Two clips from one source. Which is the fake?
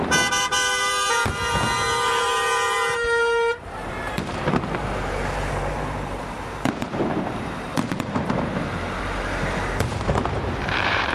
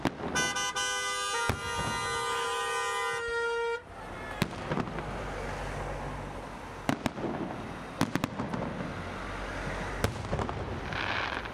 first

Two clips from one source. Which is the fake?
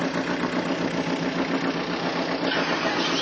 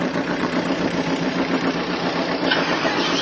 second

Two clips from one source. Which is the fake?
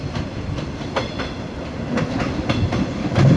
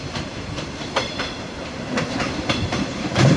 second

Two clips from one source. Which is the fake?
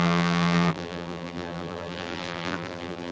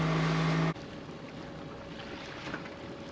first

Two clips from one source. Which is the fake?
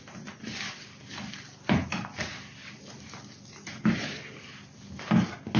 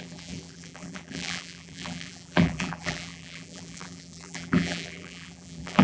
second